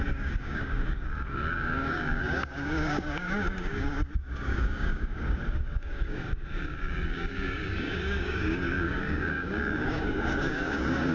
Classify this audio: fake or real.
fake